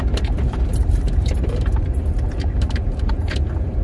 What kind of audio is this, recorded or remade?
remade